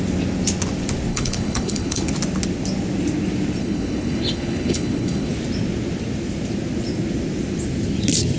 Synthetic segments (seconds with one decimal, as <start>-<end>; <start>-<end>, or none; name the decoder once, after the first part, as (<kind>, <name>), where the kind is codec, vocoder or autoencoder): 1.1-2.1 (codec, HILCodec); 3.6-5.3